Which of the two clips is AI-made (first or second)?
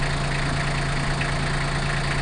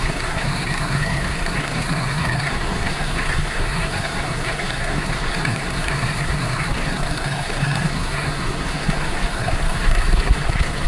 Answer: second